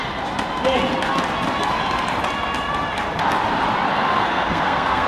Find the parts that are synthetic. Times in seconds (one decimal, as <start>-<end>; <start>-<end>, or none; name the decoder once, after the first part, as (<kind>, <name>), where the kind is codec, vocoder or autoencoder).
3.9-5.1 (codec, SNAC)